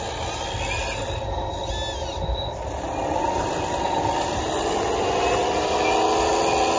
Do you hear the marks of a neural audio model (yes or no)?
no